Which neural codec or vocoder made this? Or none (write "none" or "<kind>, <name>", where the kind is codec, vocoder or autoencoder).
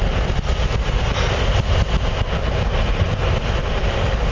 none